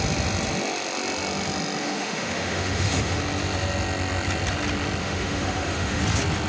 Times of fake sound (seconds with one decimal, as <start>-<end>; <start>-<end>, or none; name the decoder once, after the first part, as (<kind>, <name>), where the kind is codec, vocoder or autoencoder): 1.8-3.2 (autoencoder, DAC-VAE); 5.0-6.0